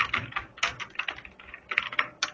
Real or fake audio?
real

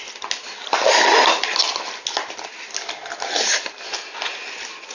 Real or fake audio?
real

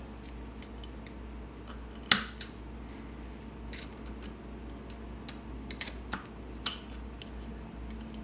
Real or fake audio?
real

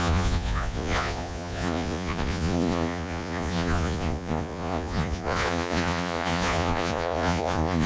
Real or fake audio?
fake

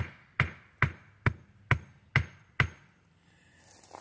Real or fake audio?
real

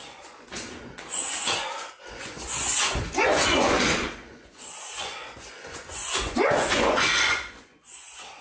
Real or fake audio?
fake